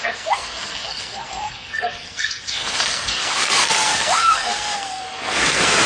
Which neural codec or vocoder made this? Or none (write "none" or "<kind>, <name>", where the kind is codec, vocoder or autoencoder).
codec, SNAC